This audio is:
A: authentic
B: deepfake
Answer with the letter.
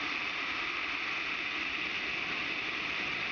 B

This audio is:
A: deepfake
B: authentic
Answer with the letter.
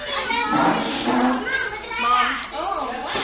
B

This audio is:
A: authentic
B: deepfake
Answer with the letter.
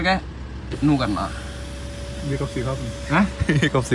A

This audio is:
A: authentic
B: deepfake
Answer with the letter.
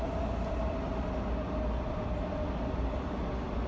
A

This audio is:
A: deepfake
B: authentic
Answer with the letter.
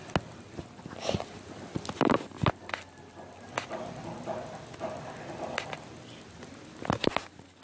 B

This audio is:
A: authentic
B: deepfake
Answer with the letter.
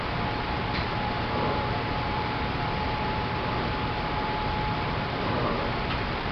B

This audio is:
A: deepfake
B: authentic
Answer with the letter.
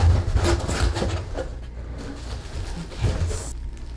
B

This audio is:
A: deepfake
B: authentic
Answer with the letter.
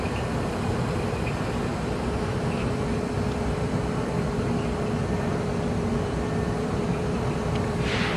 A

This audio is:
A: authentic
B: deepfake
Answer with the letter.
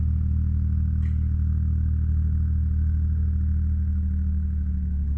A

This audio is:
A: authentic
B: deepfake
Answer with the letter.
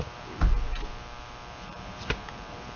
B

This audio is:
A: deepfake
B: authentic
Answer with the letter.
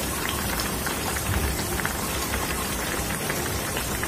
A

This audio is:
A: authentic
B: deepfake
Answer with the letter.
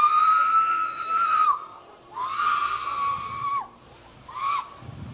B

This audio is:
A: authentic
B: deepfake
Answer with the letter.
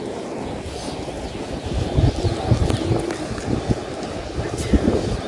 A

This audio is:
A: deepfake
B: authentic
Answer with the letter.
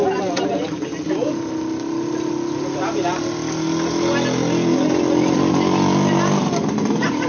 B